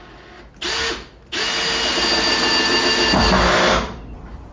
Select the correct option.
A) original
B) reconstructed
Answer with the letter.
A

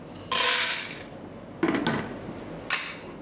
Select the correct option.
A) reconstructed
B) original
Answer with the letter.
B